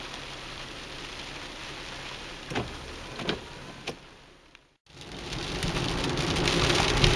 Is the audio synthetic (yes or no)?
no